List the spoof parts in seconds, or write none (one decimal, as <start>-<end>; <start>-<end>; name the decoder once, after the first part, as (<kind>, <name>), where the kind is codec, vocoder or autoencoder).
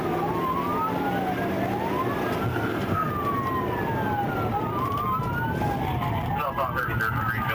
2.5-3.1 (codec, SNAC)